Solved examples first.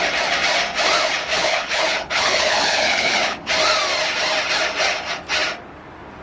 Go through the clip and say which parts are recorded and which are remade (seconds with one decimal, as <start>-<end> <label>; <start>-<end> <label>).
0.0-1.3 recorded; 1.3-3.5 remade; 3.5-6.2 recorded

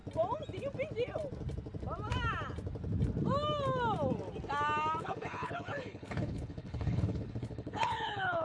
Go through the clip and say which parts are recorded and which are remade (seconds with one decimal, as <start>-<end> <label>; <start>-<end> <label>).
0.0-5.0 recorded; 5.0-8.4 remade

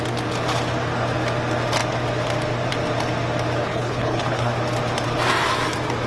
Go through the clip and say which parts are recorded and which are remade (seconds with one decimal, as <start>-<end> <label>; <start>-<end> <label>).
0.0-3.6 recorded; 3.6-4.5 remade; 4.5-6.1 recorded

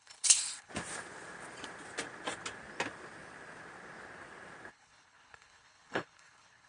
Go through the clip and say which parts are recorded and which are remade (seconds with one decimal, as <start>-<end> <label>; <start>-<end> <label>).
0.0-0.7 remade; 0.7-4.7 recorded; 4.7-6.7 remade

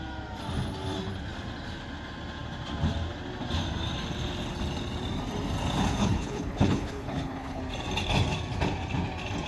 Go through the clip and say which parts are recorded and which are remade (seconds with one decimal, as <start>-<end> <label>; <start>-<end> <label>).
0.0-6.0 recorded; 6.0-7.6 remade; 7.6-9.5 recorded

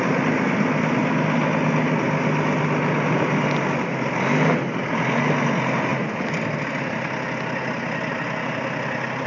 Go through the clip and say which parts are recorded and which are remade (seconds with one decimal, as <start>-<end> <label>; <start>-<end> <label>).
0.0-9.3 recorded